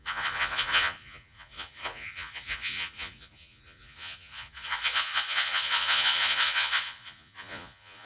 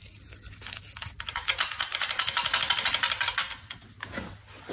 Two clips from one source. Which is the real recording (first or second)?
second